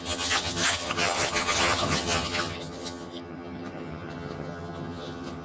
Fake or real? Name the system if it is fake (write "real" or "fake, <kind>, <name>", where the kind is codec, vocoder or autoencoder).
fake, vocoder, HiFi-GAN